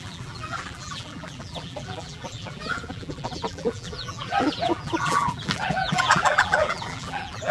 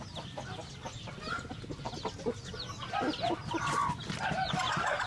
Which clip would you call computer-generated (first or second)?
first